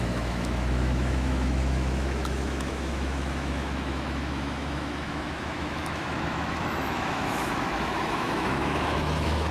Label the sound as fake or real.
fake